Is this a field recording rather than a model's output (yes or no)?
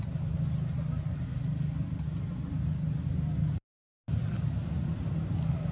yes